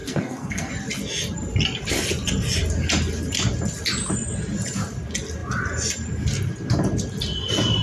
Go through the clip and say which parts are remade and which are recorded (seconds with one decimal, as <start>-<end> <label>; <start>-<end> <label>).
0.0-0.7 remade; 0.7-7.8 recorded